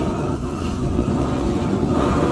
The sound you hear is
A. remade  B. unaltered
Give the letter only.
A